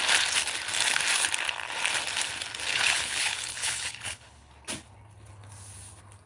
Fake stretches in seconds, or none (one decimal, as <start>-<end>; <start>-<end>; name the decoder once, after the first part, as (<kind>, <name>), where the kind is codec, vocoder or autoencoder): 2.7-4.5 (codec, HILCodec)